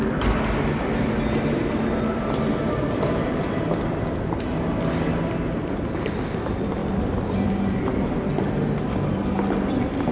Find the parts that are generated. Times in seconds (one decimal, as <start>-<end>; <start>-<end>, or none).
6.8-7.8